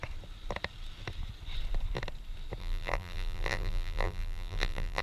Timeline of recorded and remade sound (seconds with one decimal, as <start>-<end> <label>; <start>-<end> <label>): 0.0-2.6 recorded; 2.6-5.0 remade